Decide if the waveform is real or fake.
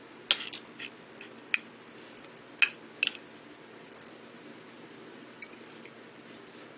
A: real